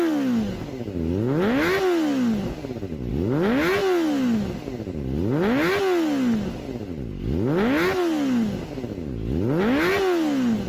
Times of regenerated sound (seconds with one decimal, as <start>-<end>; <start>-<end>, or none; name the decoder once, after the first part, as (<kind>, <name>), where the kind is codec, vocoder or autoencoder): none